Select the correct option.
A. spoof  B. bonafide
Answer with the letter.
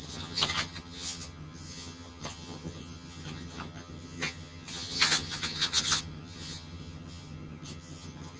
A